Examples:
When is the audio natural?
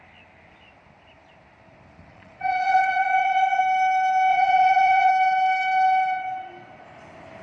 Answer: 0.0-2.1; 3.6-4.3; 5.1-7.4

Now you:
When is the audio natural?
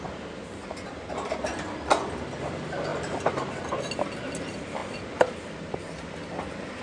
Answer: 0.0-6.8